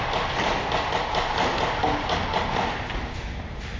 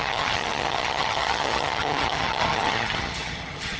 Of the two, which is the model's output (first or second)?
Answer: second